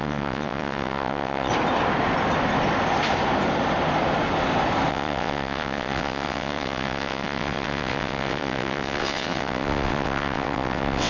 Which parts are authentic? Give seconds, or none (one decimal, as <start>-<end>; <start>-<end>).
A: 1.5-4.9